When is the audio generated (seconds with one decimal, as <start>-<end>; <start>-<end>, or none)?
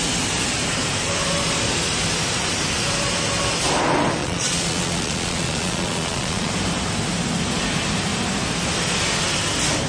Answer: 4.2-6.5